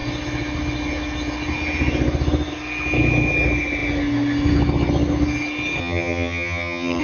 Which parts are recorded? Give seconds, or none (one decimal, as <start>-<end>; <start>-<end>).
0.0-5.8